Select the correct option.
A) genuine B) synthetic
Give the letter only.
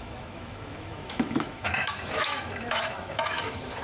B